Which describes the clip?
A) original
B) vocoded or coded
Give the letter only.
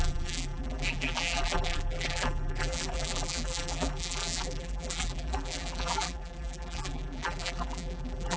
B